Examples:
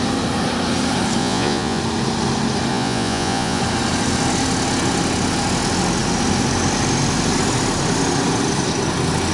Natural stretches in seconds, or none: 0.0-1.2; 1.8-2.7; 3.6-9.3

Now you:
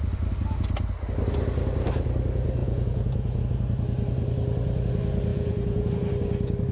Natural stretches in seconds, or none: 0.0-2.6; 3.4-5.3; 5.9-6.7

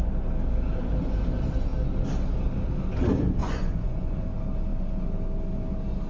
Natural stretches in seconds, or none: 0.0-3.4; 4.3-6.1